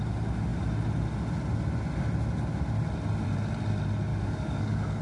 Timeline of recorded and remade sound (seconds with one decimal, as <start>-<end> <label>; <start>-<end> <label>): 0.0-4.1 recorded; 4.1-5.0 remade